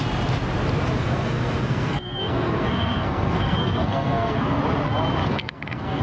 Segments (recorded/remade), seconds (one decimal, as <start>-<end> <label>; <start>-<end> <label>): 0.0-1.0 recorded; 1.0-4.6 remade; 4.6-5.2 recorded; 5.2-6.0 remade